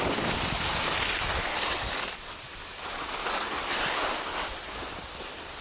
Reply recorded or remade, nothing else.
recorded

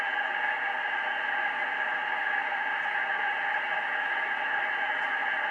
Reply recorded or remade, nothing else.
recorded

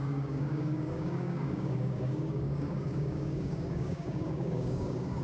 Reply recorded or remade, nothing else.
remade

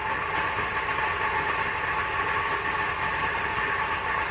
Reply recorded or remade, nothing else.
recorded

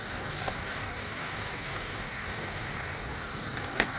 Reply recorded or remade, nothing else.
remade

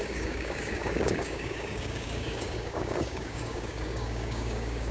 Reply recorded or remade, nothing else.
remade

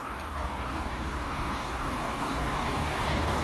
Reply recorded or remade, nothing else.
remade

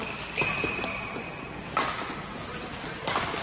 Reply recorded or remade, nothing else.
recorded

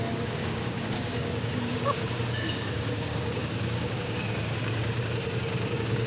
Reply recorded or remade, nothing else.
remade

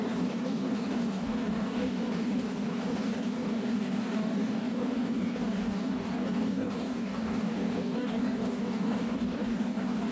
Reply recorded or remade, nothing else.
remade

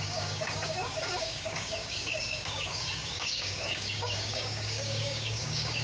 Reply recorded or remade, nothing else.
remade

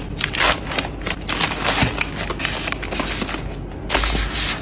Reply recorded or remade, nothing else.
recorded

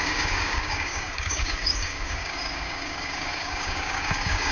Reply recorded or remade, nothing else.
remade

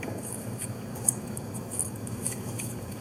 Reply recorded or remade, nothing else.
remade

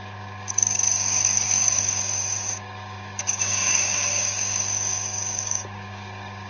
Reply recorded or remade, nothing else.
remade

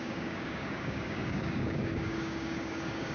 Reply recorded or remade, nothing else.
remade